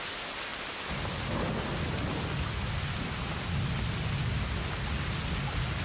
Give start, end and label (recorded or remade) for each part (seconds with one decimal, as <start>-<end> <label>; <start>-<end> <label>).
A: 0.0-0.5 recorded; 0.5-1.7 remade; 1.7-5.8 recorded